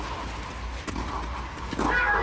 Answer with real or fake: real